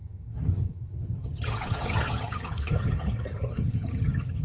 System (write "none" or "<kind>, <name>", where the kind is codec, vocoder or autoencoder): vocoder, HiFi-GAN